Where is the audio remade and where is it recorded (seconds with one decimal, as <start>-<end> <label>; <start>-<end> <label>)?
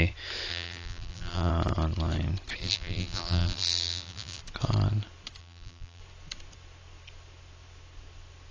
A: 0.0-0.5 recorded; 0.5-1.5 remade; 1.5-2.6 recorded; 2.6-4.4 remade; 4.4-5.4 recorded; 5.4-6.0 remade; 6.0-8.5 recorded